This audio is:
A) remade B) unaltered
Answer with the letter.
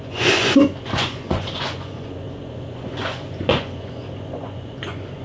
A